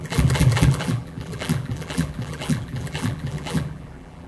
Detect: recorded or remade remade